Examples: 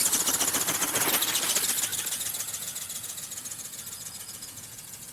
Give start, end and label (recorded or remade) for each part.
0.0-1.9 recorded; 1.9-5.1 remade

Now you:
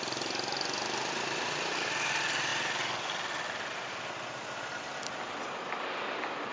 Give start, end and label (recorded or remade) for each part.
0.0-6.5 recorded

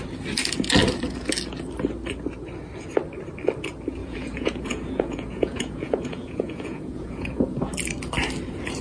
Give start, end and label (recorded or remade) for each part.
0.0-4.0 recorded; 4.0-7.7 remade; 7.7-8.8 recorded

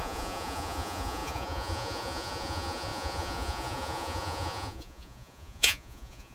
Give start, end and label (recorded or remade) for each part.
0.0-6.3 remade

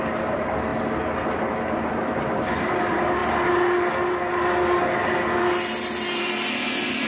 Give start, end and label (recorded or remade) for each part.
0.0-7.1 recorded